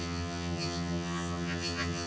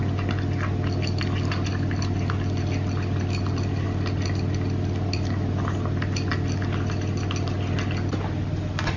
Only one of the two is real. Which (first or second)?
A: second